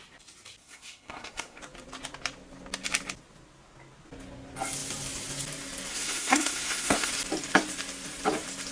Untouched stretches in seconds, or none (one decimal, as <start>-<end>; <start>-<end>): 0.0-0.6; 1.6-5.9; 7.1-8.7